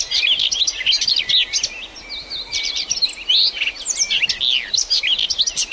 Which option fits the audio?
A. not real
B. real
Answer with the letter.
B